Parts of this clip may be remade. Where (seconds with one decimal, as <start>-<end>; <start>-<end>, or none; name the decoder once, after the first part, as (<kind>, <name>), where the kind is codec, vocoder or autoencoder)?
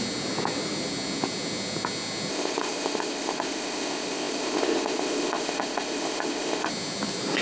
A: 2.3-6.7 (codec, ZipCodec)